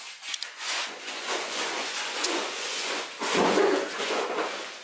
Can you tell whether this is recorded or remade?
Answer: remade